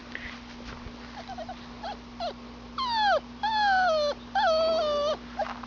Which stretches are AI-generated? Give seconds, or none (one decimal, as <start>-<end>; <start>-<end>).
none